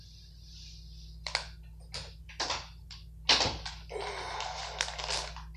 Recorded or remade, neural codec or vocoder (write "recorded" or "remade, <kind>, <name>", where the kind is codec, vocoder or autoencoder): recorded